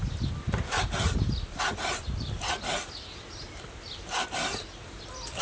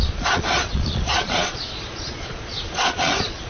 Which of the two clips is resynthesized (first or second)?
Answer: second